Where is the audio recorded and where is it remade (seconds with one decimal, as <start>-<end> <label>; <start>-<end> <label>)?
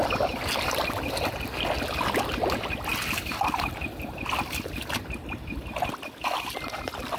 0.0-7.2 recorded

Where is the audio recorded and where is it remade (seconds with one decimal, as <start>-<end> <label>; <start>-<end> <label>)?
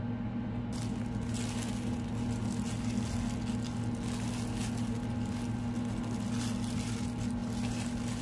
0.0-8.2 recorded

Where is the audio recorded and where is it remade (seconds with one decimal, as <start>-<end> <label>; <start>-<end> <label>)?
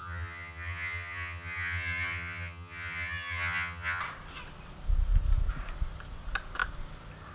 0.0-4.0 remade; 4.0-7.3 recorded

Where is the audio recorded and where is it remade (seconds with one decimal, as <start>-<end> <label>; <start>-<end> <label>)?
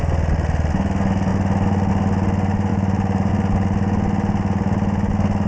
0.0-2.7 recorded; 2.7-3.3 remade; 3.3-5.5 recorded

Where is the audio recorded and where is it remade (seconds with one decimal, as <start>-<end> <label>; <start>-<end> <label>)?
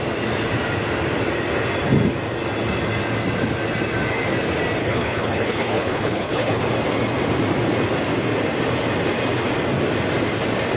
0.0-4.8 recorded; 4.8-6.6 remade; 6.6-10.8 recorded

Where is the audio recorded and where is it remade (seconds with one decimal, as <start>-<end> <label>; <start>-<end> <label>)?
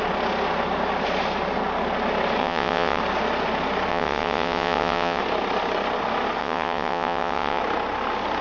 0.0-2.4 recorded; 2.4-3.0 remade; 3.0-3.9 recorded; 3.9-5.2 remade; 5.2-6.4 recorded; 6.4-7.6 remade; 7.6-8.4 recorded